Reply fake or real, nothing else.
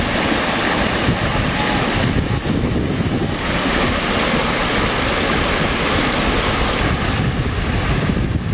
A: real